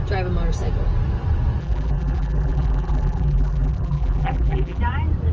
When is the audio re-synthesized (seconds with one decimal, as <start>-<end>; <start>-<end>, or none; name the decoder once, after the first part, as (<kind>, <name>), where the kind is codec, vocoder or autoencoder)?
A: 1.6-4.8 (vocoder, BigVGAN v2)